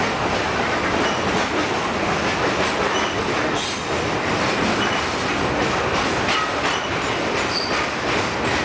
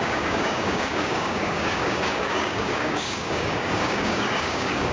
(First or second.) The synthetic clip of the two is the second